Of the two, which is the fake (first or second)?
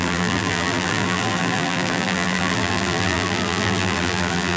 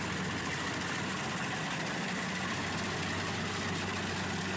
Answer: first